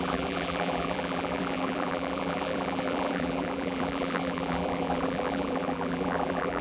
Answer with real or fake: fake